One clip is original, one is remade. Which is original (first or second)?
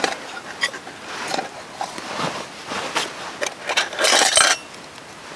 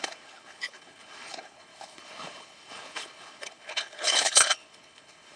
first